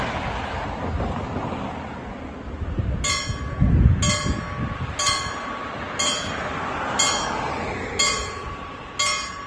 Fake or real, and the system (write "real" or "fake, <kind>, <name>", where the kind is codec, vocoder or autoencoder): real